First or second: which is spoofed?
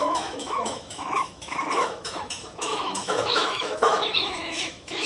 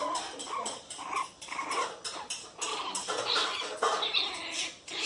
first